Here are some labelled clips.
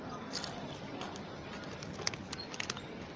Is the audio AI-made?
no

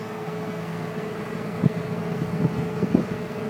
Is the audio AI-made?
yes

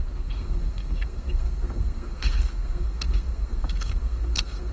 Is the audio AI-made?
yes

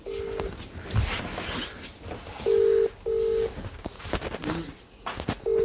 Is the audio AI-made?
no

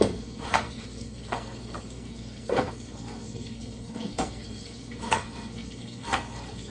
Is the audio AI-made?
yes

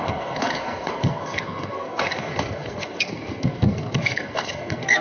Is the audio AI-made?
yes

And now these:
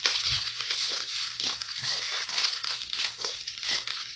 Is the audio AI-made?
yes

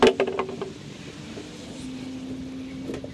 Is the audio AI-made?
no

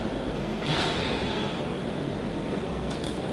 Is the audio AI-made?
yes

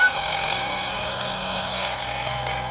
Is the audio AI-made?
yes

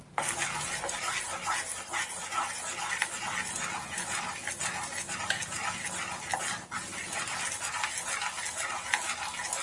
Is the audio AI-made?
no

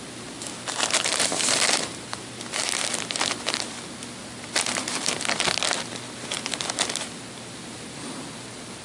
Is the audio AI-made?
no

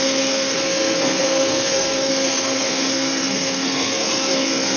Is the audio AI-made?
yes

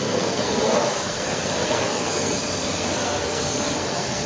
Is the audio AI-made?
yes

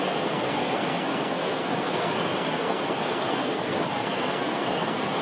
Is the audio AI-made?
yes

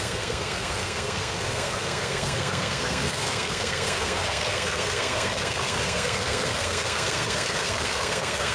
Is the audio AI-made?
yes